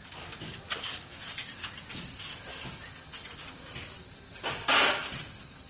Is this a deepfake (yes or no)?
no